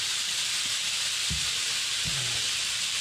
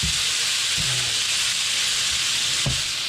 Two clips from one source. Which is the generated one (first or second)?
first